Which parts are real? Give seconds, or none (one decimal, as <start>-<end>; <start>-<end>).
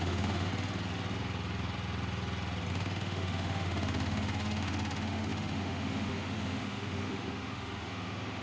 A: 0.5-2.7